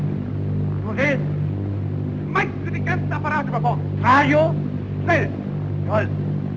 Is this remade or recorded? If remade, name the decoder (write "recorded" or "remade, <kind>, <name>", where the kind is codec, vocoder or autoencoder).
recorded